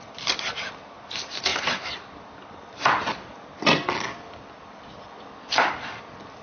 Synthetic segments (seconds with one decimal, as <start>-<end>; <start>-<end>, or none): none